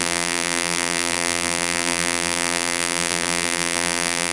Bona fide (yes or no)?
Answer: no